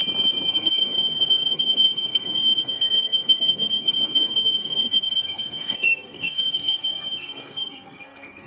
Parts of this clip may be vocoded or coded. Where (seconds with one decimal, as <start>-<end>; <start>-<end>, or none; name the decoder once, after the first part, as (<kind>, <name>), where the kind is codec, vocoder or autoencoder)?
0.5-8.5 (codec, SNAC)